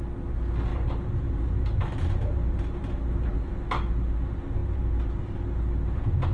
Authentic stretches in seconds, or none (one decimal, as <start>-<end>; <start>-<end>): 0.0-0.7; 3.5-4.6; 5.4-6.3